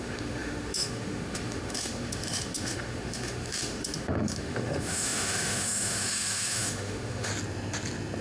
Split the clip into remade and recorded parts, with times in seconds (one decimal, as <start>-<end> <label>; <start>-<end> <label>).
0.0-7.3 remade; 7.3-8.2 recorded